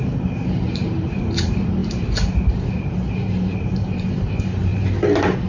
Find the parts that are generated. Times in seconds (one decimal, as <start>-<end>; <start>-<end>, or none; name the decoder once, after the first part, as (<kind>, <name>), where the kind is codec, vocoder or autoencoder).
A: 0.0-4.7 (vocoder, BigVGAN v2)